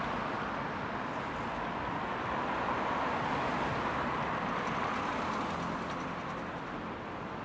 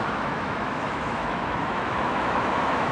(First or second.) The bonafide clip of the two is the first